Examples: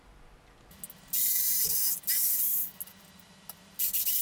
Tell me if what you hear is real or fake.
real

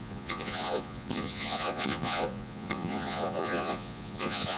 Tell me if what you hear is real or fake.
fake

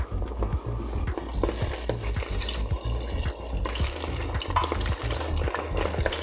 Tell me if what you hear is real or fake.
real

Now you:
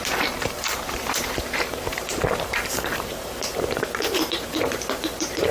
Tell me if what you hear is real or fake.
fake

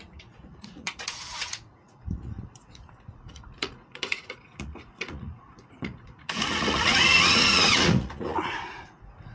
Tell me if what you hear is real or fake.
fake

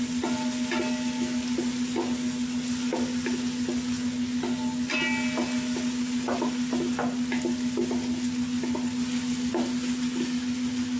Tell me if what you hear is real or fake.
real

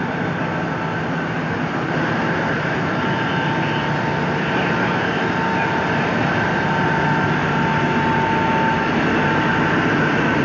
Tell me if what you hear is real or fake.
real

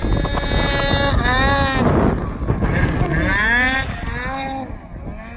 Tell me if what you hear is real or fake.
real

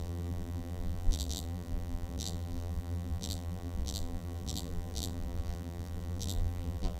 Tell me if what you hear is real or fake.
fake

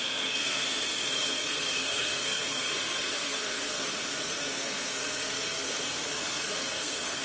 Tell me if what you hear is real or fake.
fake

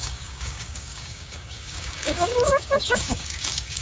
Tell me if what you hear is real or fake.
fake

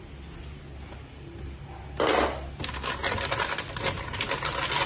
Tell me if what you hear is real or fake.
real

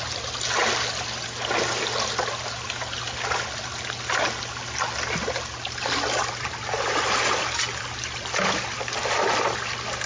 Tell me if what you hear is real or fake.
real